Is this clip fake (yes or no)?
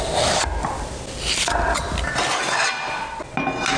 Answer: no